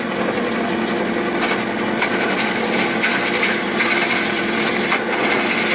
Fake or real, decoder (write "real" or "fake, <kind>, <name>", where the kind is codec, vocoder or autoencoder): real